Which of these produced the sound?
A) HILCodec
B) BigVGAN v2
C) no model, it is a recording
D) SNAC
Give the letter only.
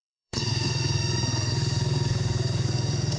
D